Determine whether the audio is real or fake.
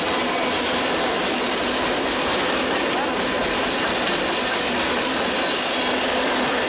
real